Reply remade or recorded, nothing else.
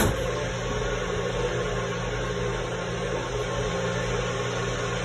recorded